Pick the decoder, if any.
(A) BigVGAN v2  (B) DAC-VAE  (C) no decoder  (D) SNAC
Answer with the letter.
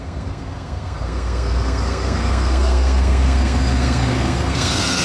D